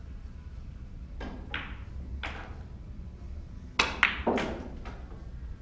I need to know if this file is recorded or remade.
recorded